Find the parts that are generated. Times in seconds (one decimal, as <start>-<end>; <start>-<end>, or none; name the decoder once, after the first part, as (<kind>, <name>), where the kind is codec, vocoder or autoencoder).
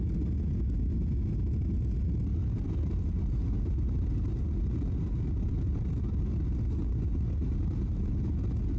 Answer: 2.3-6.2 (vocoder, BigVGAN v2); 6.8-8.1